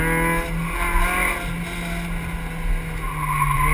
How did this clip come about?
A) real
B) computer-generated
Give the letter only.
A